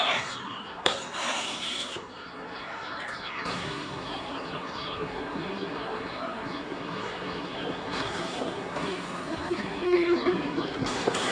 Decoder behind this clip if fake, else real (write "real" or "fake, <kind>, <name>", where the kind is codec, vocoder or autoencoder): fake, codec, SNAC